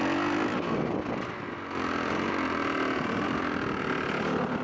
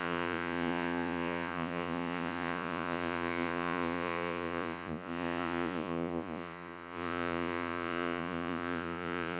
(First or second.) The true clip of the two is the first